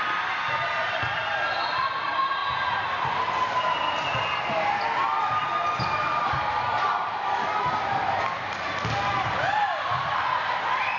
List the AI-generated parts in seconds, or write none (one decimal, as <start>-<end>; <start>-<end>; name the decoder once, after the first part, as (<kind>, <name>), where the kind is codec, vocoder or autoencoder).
none